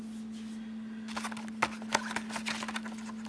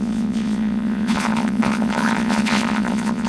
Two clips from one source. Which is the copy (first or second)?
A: second